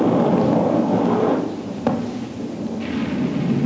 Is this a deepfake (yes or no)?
no